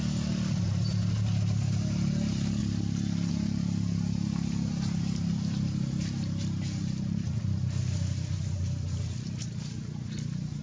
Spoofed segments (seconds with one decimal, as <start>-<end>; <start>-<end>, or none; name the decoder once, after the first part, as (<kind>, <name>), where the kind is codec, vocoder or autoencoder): none